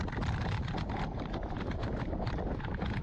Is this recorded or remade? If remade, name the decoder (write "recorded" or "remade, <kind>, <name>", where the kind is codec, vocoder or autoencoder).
recorded